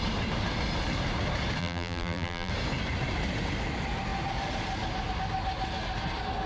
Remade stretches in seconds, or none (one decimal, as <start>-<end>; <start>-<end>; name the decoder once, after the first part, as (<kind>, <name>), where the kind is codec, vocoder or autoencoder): 1.6-2.5 (vocoder, BigVGAN v2)